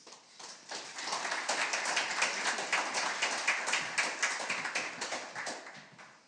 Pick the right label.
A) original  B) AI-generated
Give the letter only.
A